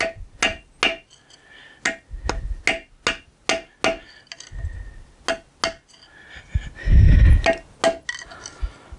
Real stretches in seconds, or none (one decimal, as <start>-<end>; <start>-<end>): 0.0-9.0